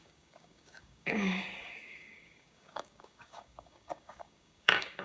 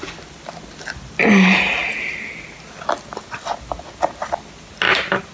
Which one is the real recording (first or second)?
second